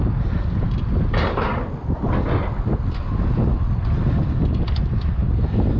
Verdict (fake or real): real